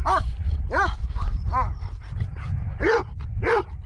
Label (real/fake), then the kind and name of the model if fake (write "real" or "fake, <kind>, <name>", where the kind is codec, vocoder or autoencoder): real